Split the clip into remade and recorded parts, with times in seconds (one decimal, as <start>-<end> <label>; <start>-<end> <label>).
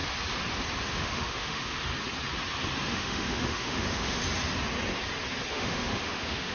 0.0-0.9 recorded; 0.9-1.9 remade; 1.9-2.9 recorded; 2.9-4.2 remade; 4.2-5.5 recorded; 5.5-6.5 remade